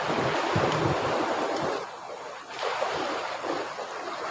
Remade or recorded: recorded